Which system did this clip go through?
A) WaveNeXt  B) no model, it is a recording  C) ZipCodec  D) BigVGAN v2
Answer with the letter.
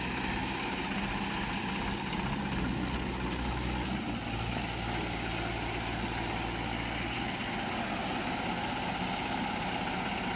B